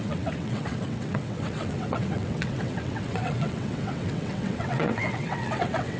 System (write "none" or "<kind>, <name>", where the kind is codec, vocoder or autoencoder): vocoder, WaveNeXt